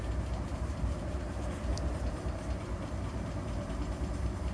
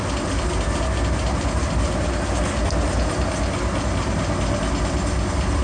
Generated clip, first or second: first